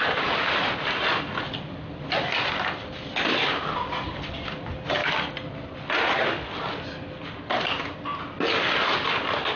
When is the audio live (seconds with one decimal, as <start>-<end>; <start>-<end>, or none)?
0.0-9.6